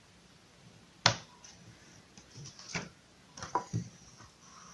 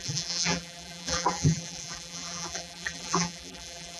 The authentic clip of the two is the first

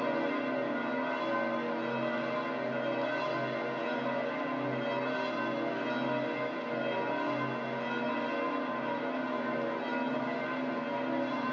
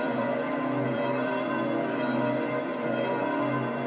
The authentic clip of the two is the first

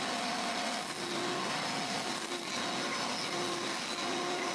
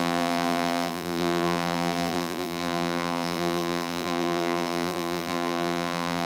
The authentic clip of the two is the first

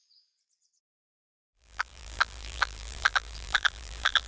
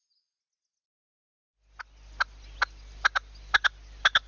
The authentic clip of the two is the second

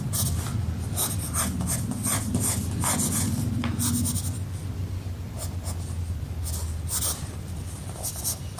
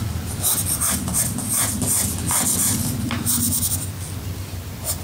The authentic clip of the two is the first